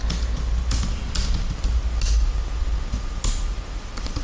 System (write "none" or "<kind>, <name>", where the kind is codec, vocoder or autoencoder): none